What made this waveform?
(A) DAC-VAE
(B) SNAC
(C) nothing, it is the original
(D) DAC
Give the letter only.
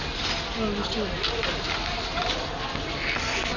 C